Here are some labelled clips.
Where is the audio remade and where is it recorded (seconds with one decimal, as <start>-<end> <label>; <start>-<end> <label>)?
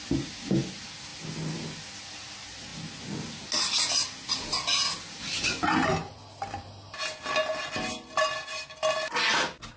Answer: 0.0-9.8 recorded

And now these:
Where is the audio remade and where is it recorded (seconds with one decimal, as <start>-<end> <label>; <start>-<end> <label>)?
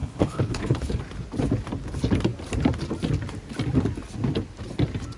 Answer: 0.0-1.0 remade; 1.0-5.2 recorded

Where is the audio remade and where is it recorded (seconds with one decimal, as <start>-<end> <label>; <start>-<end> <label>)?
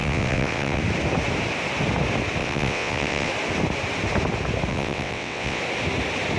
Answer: 0.0-0.8 remade; 0.8-2.4 recorded; 2.4-3.3 remade; 3.3-4.7 recorded; 4.7-5.6 remade; 5.6-6.4 recorded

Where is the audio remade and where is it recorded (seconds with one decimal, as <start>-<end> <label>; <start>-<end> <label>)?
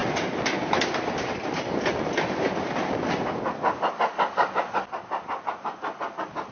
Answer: 0.0-6.5 recorded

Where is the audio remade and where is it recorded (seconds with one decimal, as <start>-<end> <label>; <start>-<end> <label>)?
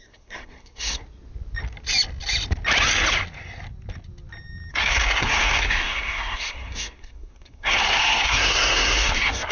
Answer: 0.0-1.0 remade; 1.0-4.7 recorded; 4.7-9.5 remade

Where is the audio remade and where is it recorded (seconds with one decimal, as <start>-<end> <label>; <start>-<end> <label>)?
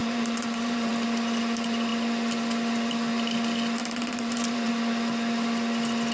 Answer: 0.0-0.9 remade; 0.9-3.8 recorded; 3.8-4.7 remade; 4.7-6.1 recorded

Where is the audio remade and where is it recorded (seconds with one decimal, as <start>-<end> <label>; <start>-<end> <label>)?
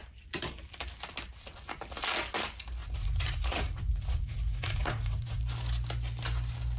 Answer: 0.0-2.8 recorded; 2.8-5.4 remade; 5.4-6.8 recorded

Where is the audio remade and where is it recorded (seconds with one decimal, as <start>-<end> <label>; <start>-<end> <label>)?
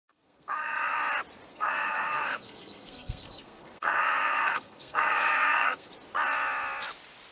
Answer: 0.0-1.0 remade; 1.0-1.5 recorded; 1.5-5.9 remade; 5.9-7.3 recorded